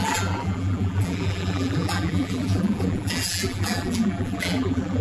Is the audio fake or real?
fake